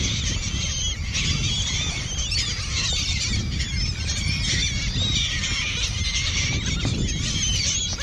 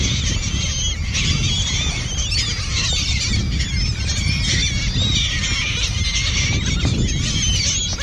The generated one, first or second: first